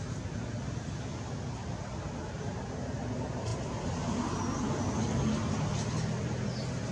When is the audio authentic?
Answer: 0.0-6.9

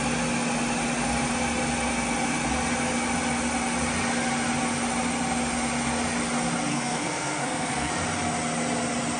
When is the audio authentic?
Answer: 0.0-6.7; 7.9-9.2

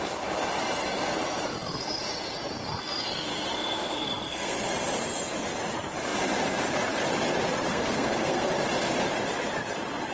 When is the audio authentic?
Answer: 0.0-3.3; 4.7-7.7; 8.5-10.1

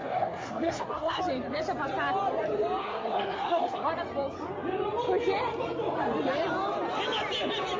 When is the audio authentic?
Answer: 1.2-2.8; 3.9-7.8

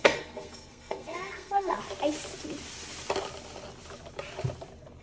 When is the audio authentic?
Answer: 1.8-5.0

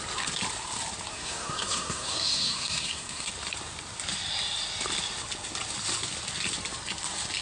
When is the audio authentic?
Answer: 0.0-1.1; 3.3-7.4

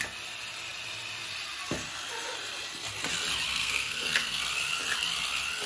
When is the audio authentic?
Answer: 0.0-3.5; 4.4-5.7

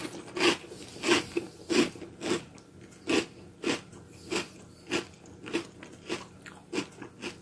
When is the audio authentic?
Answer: 0.0-7.4